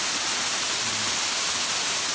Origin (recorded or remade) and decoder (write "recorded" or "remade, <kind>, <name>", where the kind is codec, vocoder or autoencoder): recorded